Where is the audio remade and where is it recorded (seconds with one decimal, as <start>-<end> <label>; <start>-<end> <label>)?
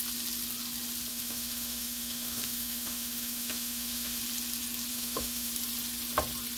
0.0-1.1 recorded; 1.1-4.2 remade; 4.2-4.9 recorded; 4.9-5.5 remade; 5.5-6.6 recorded